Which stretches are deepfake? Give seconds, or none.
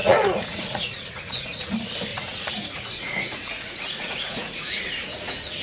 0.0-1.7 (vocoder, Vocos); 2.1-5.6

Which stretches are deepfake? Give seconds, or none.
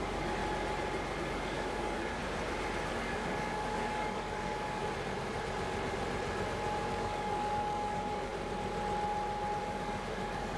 0.0-0.4 (codec, DAC); 1.2-2.2; 2.9-4.8; 6.8-8.3; 9.6-10.6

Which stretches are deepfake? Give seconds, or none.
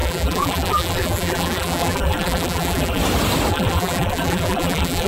0.0-3.0 (vocoder, BigVGAN v2); 3.5-5.1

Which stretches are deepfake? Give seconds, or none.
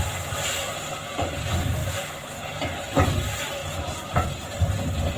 none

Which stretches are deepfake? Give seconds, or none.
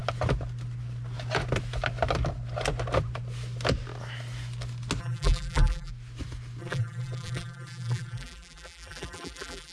5.0-5.9 (vocoder, BigVGAN v2); 6.6-9.7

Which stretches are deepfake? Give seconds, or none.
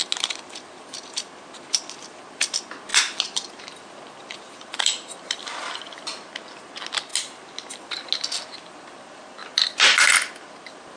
none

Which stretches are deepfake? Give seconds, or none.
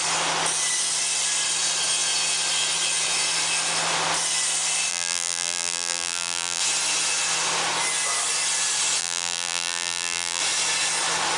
4.9-6.6 (vocoder, BigVGAN v2); 9.0-10.4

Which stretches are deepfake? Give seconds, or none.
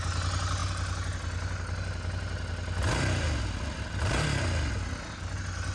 none